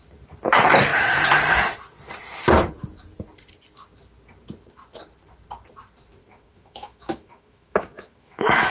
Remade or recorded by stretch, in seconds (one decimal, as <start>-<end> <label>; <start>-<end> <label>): 0.0-6.2 recorded; 6.2-8.7 remade